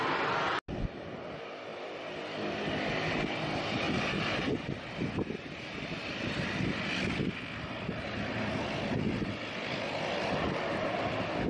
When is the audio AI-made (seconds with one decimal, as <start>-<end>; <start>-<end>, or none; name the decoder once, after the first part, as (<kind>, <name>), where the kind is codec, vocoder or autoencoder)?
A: none